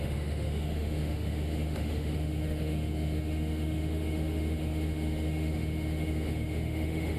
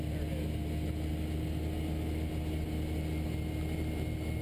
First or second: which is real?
second